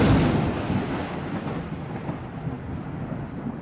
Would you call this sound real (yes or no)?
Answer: yes